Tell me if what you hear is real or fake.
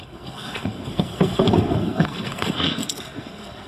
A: fake